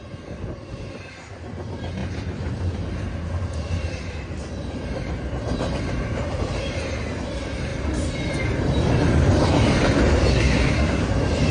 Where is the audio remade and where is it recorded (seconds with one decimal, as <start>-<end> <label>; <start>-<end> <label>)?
0.0-10.3 recorded; 10.3-11.0 remade; 11.0-11.5 recorded

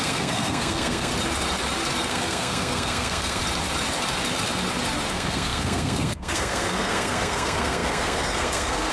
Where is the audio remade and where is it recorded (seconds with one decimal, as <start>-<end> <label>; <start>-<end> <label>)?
0.0-1.1 remade; 1.1-2.0 recorded; 2.0-3.4 remade; 3.4-5.1 recorded; 5.1-8.9 remade

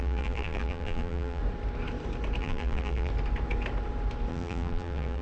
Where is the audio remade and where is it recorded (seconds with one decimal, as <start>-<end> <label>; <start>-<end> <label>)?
0.0-1.4 remade; 1.4-2.4 recorded; 2.4-3.1 remade; 3.1-4.3 recorded; 4.3-5.2 remade

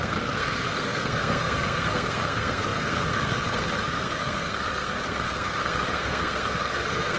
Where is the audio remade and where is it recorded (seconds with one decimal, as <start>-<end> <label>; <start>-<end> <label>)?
0.0-7.2 remade

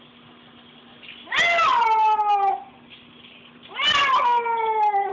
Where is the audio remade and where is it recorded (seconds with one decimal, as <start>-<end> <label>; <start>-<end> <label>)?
0.0-5.1 recorded

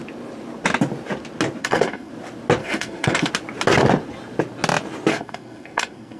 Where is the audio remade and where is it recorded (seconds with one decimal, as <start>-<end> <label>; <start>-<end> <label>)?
0.0-1.6 recorded; 1.6-2.1 remade; 2.1-2.6 recorded; 2.6-3.3 remade; 3.3-5.1 recorded; 5.1-6.2 remade